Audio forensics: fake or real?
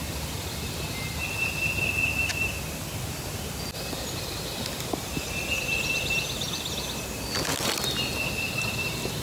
real